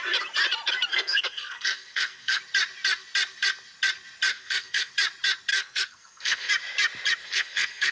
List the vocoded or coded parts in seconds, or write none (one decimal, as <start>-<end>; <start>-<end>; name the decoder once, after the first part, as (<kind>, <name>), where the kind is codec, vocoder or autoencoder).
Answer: 0.9-2.4 (codec, SNAC); 4.3-4.9; 5.5-6.5; 7.2-7.9